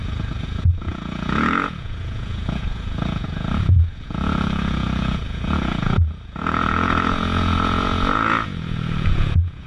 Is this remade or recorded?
remade